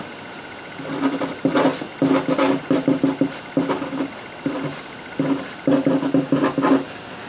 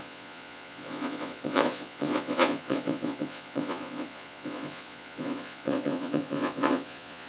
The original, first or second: first